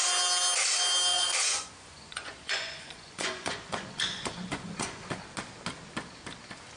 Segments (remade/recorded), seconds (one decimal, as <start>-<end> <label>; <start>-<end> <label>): 0.0-1.1 recorded; 1.1-5.2 remade; 5.2-6.8 recorded